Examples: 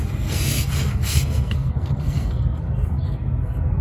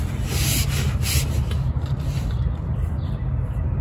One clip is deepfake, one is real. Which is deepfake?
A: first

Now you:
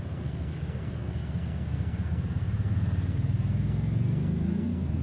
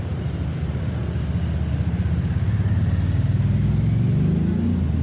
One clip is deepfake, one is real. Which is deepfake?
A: first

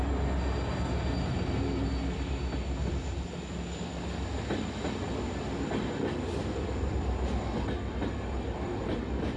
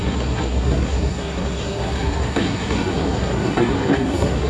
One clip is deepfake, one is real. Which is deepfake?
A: second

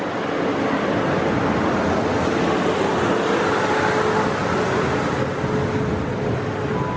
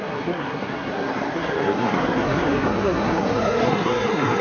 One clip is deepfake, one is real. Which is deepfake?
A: second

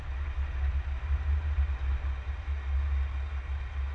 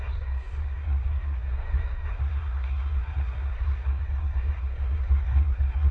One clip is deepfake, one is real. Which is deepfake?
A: second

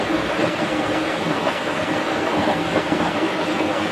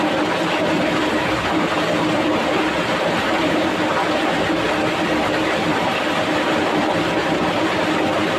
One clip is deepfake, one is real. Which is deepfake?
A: first